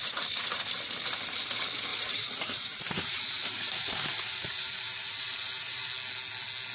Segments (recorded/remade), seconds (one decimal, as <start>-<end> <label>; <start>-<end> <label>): 0.0-1.9 recorded; 1.9-5.9 remade; 5.9-6.7 recorded